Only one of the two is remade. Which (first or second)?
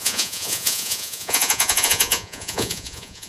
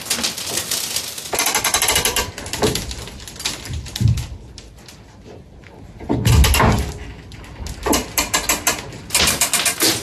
first